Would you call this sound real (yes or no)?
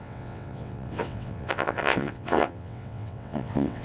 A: no